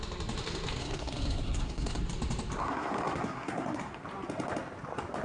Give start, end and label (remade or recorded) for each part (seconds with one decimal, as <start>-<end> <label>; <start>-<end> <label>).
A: 0.0-0.8 recorded; 0.8-2.0 remade; 2.0-2.6 recorded; 2.6-4.0 remade; 4.0-5.2 recorded